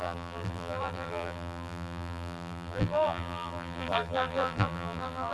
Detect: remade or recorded remade